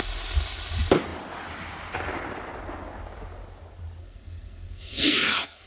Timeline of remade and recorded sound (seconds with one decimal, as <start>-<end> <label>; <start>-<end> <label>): 0.0-4.0 recorded; 4.0-5.7 remade